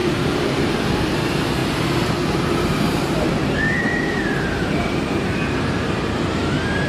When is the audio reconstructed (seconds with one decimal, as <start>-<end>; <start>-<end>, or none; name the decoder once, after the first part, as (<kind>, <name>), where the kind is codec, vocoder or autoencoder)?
0.0-6.9 (vocoder, BigVGAN v2)